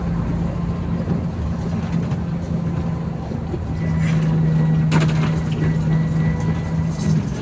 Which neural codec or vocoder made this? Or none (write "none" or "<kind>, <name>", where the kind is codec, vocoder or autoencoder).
none